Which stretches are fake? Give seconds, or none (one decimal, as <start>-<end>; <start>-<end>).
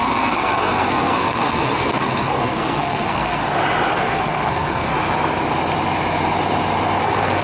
0.0-3.4; 3.9-4.9; 7.0-7.4